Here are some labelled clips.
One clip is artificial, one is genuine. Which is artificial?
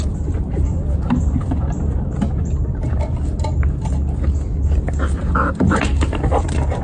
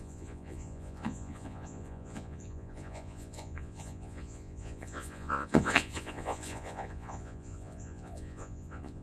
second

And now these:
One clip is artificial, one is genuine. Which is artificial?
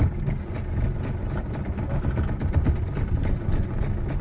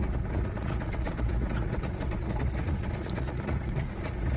second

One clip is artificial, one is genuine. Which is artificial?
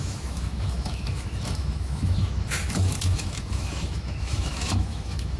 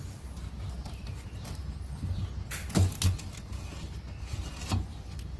first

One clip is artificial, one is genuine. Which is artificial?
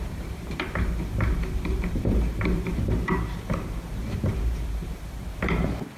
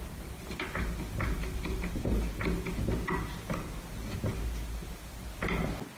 first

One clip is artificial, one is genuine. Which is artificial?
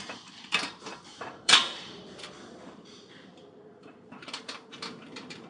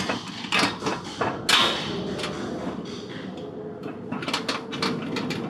first